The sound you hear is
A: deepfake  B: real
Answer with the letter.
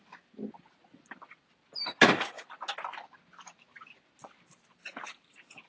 B